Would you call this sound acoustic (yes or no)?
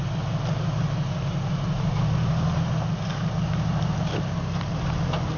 yes